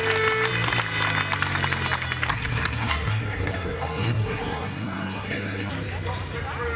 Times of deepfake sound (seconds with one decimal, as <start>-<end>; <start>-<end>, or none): 2.3-5.7